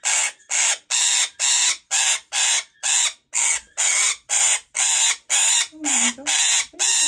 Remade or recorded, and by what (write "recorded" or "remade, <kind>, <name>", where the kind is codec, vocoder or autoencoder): recorded